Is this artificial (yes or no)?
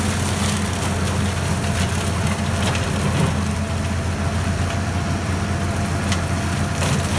no